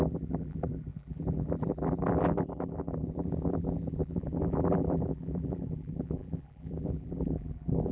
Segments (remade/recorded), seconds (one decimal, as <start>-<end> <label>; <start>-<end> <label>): 0.0-7.9 remade